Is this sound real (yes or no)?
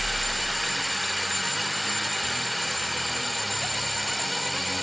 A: yes